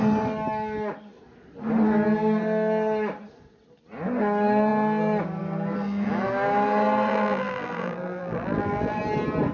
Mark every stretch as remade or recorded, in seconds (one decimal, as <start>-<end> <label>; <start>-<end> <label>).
0.0-7.1 recorded; 7.1-9.0 remade; 9.0-9.5 recorded

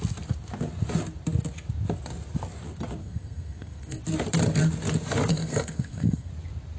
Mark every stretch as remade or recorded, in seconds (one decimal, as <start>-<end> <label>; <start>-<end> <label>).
0.0-3.0 recorded; 3.0-4.0 remade; 4.0-5.3 recorded; 5.3-6.3 remade; 6.3-6.8 recorded